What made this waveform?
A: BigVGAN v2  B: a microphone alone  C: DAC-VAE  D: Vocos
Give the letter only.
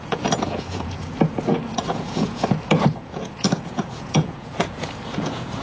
D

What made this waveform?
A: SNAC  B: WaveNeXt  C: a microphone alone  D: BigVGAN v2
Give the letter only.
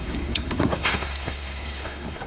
A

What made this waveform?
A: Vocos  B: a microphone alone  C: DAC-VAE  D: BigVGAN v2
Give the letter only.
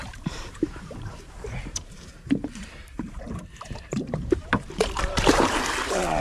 D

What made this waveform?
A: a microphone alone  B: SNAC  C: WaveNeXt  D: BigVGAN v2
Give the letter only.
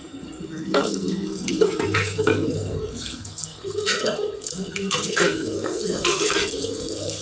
B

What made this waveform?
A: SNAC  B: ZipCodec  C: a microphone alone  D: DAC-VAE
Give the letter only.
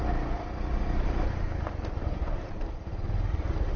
C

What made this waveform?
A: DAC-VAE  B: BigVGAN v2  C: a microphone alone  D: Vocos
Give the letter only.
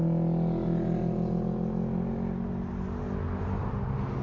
C